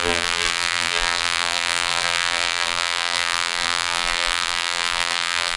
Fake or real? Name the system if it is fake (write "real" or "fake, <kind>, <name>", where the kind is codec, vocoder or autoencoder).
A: fake, vocoder, BigVGAN v2